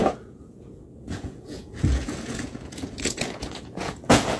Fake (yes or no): yes